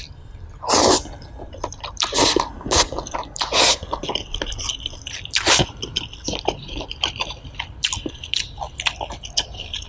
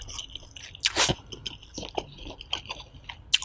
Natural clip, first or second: second